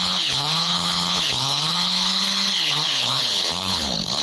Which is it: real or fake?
fake